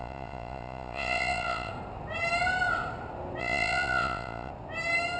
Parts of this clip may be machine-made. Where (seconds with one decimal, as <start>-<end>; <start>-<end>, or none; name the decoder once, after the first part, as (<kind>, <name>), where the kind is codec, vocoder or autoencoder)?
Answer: 0.0-1.7 (vocoder, Vocos); 3.4-4.5